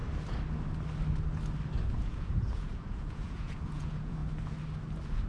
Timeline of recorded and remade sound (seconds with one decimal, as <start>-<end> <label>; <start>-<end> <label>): 0.0-1.9 recorded; 1.9-4.2 remade; 4.2-5.3 recorded